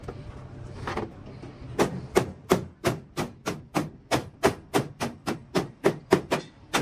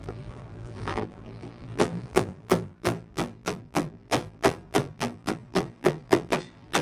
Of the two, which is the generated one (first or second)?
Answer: second